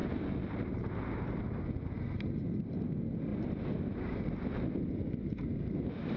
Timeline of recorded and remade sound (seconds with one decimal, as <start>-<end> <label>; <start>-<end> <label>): 0.0-0.9 remade; 0.9-6.2 recorded